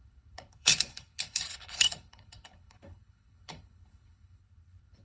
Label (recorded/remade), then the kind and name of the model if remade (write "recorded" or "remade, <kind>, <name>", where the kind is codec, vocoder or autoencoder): remade, codec, HILCodec